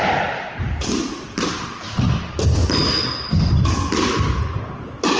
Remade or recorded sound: recorded